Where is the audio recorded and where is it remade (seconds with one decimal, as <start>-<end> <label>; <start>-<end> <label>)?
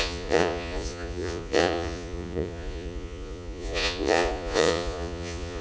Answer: 0.0-5.6 remade